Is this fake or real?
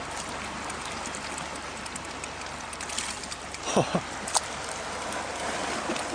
real